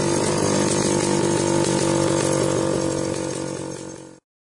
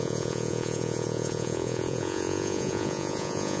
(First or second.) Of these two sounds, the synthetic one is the second